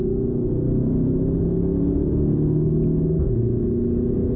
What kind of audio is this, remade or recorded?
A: recorded